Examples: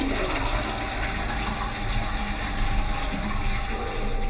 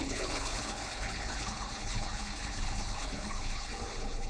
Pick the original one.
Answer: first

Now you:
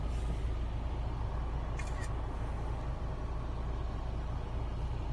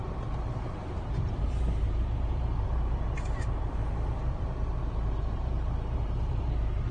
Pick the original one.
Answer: first